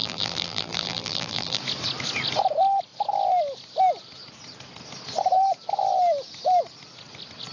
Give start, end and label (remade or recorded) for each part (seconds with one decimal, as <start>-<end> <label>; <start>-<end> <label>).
0.0-1.6 remade; 1.6-7.5 recorded